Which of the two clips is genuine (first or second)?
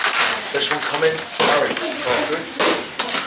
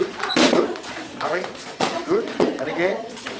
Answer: first